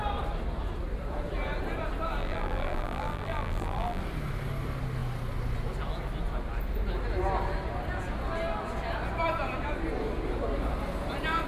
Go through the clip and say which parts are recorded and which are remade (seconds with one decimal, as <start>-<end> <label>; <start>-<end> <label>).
0.0-2.2 recorded; 2.2-4.0 remade; 4.0-11.5 recorded